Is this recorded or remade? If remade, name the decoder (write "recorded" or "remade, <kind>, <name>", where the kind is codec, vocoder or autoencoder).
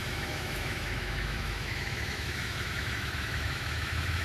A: remade, autoencoder, DAC-VAE